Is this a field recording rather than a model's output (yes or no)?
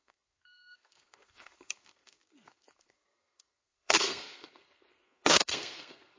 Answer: no